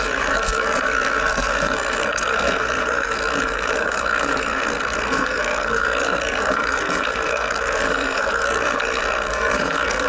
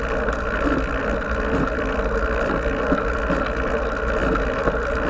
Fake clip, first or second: first